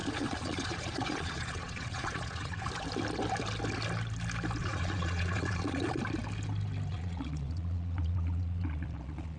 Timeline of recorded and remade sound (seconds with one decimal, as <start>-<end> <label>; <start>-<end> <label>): 0.0-2.7 remade; 2.7-4.6 recorded; 4.6-6.0 remade; 6.0-6.9 recorded; 6.9-9.4 remade